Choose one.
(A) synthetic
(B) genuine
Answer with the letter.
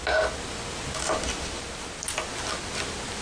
B